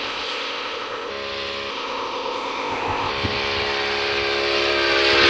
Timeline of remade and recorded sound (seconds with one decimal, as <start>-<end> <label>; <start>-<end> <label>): 0.0-1.1 remade; 1.1-1.7 recorded; 1.7-3.1 remade; 3.1-5.3 recorded

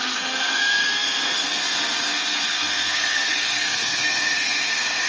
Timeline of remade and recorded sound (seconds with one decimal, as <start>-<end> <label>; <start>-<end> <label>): 0.0-5.1 remade

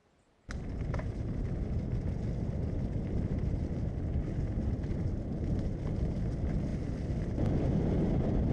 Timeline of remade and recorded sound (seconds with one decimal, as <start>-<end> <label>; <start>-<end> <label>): 0.0-8.5 recorded

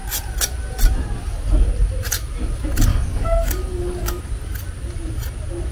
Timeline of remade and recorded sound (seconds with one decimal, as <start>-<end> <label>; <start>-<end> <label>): 0.0-2.9 recorded; 2.9-4.2 remade; 4.2-5.7 recorded